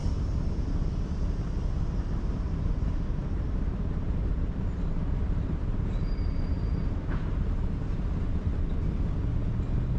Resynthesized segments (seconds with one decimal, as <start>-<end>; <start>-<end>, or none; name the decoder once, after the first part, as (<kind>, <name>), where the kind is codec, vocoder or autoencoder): 0.0-2.7 (vocoder, BigVGAN v2); 3.2-8.0